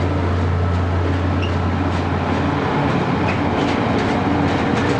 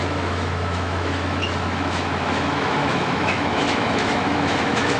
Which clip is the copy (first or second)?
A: second